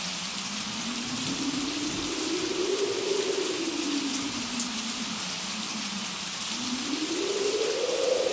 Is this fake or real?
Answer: real